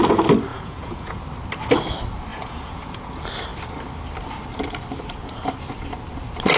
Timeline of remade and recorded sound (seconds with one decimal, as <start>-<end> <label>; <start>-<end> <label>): 0.0-0.5 recorded; 0.5-1.2 remade; 1.2-2.3 recorded; 2.3-3.1 remade; 3.1-6.6 recorded